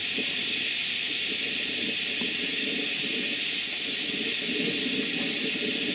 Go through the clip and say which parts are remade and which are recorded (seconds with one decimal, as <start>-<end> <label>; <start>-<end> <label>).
0.0-5.9 recorded